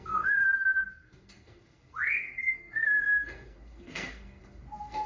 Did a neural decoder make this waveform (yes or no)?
yes